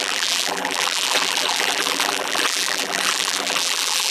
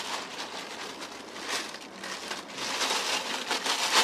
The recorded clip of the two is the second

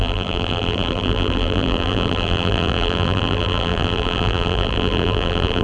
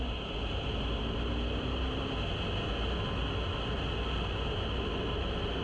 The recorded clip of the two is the second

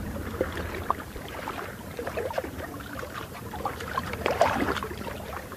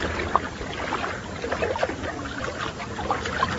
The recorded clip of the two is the second